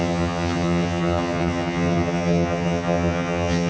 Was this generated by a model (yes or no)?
yes